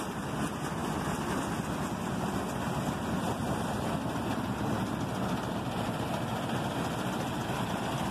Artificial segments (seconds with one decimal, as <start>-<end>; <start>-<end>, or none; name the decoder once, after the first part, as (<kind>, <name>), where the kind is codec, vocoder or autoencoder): none